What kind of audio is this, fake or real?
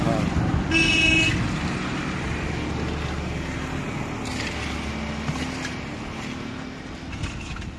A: real